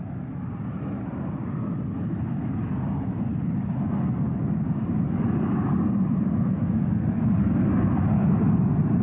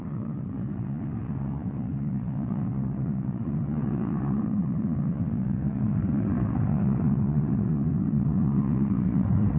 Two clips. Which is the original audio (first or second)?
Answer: first